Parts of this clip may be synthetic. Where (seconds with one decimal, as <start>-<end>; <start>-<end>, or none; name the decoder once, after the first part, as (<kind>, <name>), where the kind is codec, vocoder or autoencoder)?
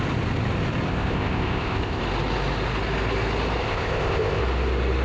0.9-2.0 (codec, ZipCodec); 3.6-4.4